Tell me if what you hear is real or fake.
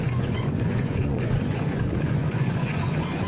fake